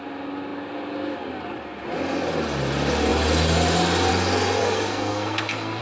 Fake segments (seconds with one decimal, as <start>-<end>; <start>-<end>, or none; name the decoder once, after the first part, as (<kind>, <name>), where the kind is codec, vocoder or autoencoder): 4.6-5.8 (codec, SNAC)